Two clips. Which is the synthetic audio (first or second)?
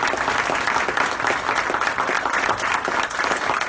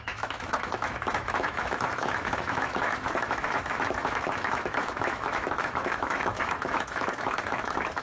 second